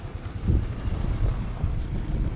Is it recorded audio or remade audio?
recorded